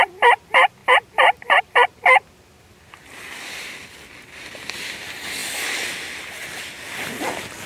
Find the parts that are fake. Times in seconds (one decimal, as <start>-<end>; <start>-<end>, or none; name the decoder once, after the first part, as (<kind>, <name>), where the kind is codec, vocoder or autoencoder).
0.8-1.6 (vocoder, BigVGAN v2)